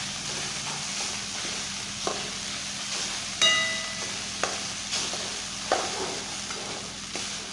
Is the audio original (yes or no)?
yes